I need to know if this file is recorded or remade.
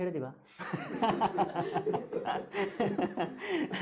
recorded